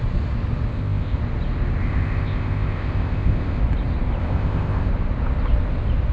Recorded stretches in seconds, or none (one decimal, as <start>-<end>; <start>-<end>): 0.0-0.7; 1.2-1.8; 3.6-4.2; 4.9-6.1